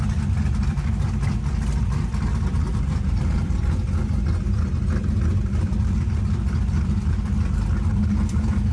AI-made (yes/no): no